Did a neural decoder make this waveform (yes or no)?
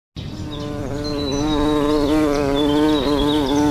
no